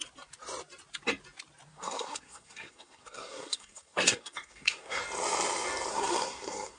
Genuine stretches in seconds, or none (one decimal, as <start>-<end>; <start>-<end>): 0.0-1.7; 5.0-5.9